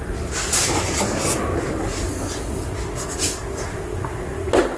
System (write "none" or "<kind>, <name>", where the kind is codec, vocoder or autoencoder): none